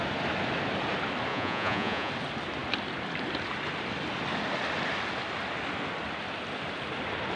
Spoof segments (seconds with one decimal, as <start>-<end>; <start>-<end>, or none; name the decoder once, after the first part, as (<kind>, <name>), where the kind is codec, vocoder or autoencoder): 1.3-2.1 (vocoder, Vocos)